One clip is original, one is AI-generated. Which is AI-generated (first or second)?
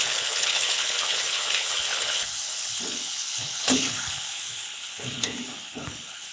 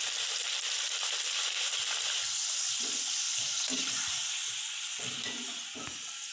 first